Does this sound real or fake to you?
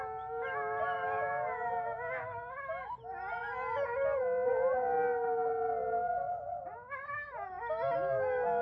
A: real